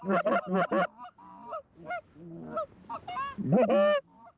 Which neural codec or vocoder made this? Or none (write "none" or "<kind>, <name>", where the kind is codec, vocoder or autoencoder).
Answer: none